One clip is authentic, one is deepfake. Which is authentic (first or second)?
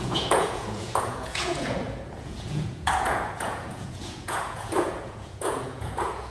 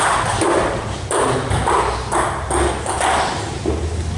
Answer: second